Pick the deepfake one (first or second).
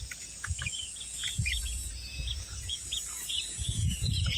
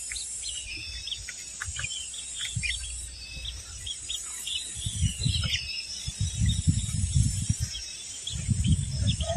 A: first